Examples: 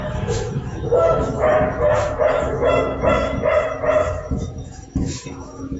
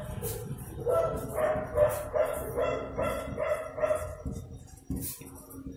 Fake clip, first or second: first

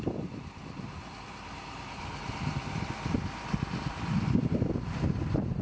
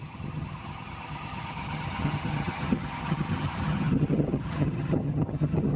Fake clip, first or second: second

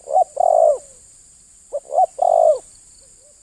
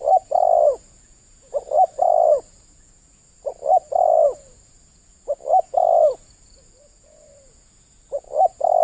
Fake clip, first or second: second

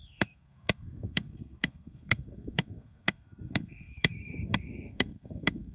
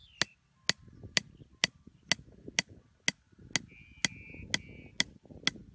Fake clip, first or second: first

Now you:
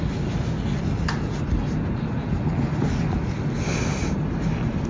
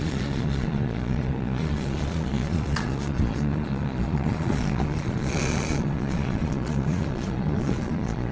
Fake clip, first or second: second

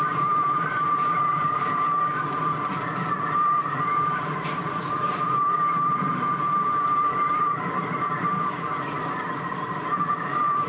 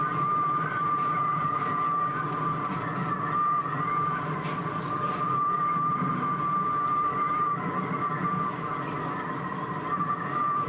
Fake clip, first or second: first